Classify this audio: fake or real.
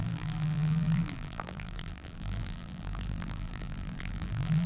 fake